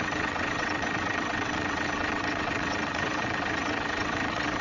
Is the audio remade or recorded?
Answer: remade